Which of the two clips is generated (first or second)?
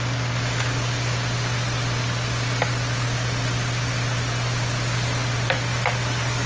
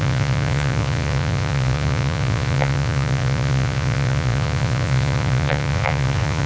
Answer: second